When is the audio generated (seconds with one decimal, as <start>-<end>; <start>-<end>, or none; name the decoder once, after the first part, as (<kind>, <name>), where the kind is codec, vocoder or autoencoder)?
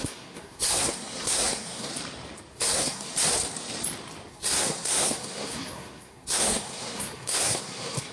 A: 0.0-1.9 (codec, SNAC); 2.5-3.1; 4.3-8.1